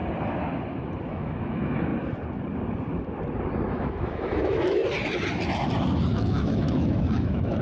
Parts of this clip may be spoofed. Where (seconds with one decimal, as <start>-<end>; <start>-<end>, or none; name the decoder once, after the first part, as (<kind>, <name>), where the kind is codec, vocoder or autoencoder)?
1.1-1.9 (autoencoder, DAC-VAE); 3.7-4.8; 6.1-7.6

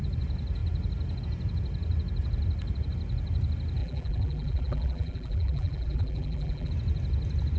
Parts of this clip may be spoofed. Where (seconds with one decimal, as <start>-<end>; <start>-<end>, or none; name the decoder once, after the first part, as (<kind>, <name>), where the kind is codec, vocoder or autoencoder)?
3.8-6.7 (vocoder, BigVGAN v2)

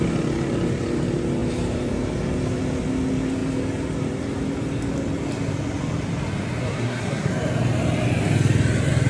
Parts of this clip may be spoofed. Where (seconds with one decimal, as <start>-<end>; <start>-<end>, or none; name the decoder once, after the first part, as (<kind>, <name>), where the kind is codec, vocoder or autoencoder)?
6.6-7.3 (codec, SNAC)

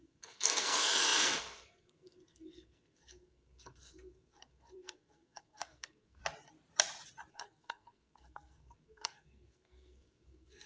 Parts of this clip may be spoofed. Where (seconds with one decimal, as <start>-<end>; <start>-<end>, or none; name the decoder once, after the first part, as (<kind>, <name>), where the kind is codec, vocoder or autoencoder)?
0.0-6.2 (codec, SNAC); 7.3-10.7

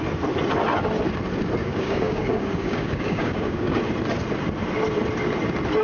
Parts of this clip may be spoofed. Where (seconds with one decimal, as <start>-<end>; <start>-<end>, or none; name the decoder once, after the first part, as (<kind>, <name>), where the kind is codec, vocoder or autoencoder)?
1.6-3.8 (codec, DAC)

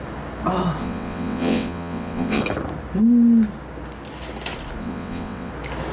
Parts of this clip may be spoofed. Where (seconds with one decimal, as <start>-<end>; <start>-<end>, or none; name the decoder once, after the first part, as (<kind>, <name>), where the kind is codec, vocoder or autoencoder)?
0.8-2.4 (vocoder, WaveNeXt); 4.8-5.5